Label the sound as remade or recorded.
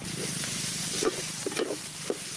remade